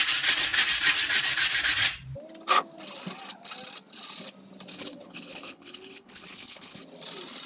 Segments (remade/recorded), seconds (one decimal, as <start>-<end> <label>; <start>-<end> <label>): 0.0-4.7 recorded; 4.7-6.8 remade; 6.8-7.5 recorded